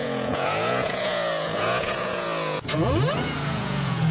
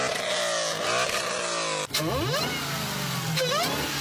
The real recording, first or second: second